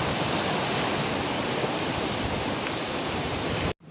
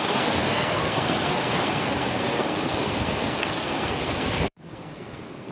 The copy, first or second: second